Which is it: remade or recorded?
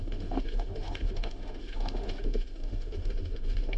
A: remade